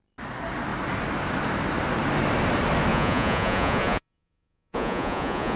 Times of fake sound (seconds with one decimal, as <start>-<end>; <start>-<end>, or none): 2.9-5.6